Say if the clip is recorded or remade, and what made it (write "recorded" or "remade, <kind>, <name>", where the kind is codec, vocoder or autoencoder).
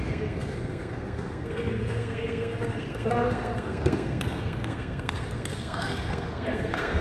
remade, codec, SNAC